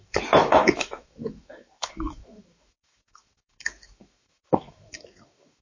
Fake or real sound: fake